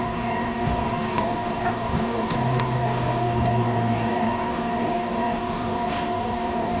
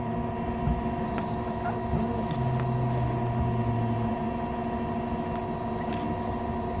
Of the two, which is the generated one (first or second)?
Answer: first